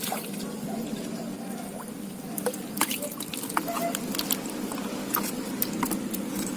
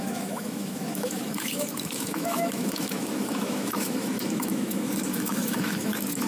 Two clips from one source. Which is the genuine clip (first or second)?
first